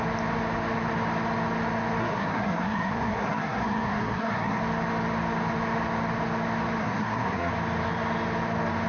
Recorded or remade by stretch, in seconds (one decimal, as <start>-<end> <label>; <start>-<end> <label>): 0.0-2.0 recorded; 2.0-4.6 remade; 4.6-6.8 recorded; 6.8-7.5 remade; 7.5-8.9 recorded